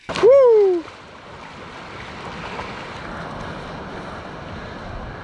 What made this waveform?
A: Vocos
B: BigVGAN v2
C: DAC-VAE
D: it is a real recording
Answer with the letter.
D